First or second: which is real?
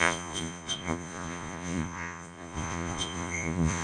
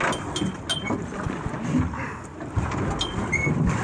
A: second